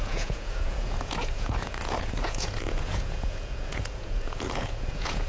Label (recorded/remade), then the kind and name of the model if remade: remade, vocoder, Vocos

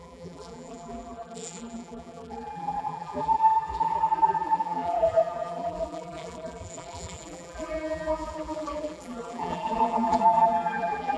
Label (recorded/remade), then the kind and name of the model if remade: remade, vocoder, BigVGAN v2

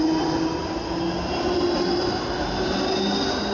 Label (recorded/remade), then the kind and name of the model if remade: recorded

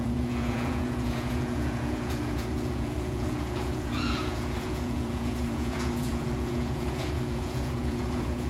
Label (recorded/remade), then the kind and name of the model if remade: remade, vocoder, Vocos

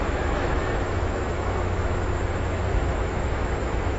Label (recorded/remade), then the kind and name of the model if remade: remade, autoencoder, DAC-VAE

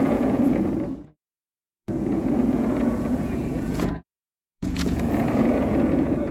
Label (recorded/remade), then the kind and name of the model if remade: remade, vocoder, Vocos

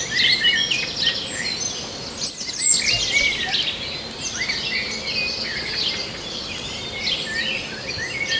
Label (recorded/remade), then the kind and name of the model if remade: recorded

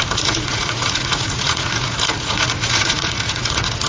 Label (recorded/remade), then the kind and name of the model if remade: remade, vocoder, Vocos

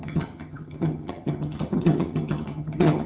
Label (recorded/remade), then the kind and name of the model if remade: remade, vocoder, HiFi-GAN